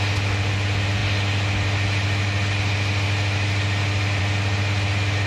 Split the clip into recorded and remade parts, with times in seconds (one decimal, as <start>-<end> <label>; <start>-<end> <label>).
0.0-5.3 recorded